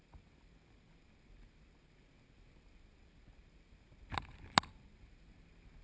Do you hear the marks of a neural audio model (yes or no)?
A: no